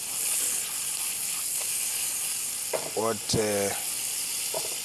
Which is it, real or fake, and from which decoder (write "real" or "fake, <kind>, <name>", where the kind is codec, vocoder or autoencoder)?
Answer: real